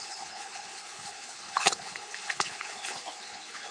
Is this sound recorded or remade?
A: remade